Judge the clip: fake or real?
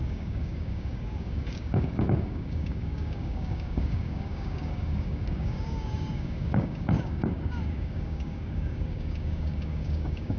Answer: fake